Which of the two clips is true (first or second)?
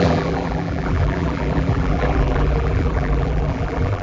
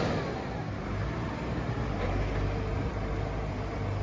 second